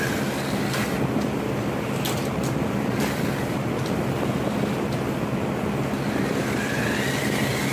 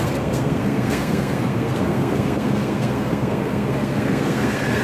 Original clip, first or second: first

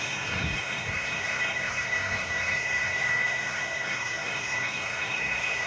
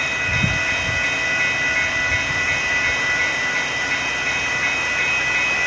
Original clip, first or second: second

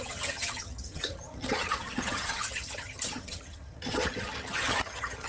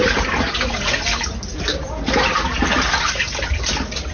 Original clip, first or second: second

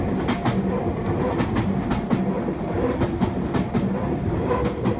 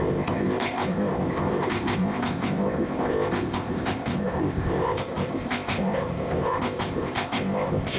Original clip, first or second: first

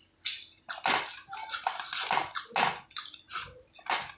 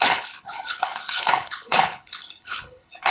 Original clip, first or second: first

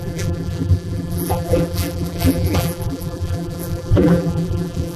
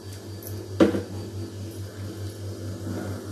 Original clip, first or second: second